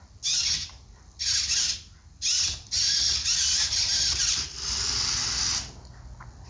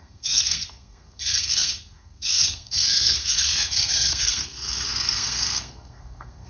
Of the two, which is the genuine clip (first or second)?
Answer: first